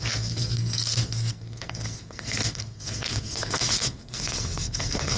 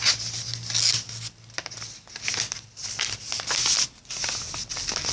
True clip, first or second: second